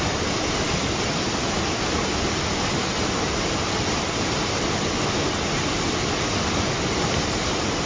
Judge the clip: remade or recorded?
recorded